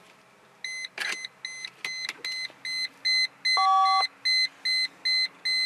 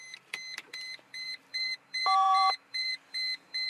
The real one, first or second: first